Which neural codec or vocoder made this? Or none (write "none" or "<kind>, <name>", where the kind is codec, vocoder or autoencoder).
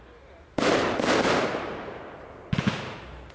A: none